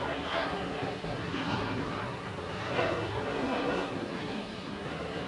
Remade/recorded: remade